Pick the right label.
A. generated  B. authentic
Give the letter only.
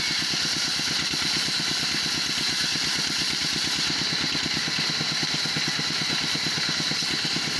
B